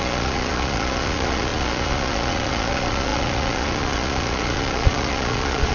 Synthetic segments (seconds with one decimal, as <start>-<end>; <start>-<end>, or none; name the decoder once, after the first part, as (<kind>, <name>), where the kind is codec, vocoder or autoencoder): 0.0-5.7 (vocoder, Vocos)